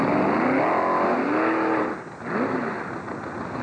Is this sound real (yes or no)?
yes